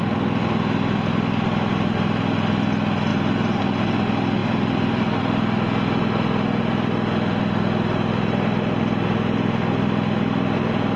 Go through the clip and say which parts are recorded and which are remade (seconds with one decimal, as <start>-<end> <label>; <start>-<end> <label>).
0.0-4.4 recorded; 4.4-5.2 remade; 5.2-11.0 recorded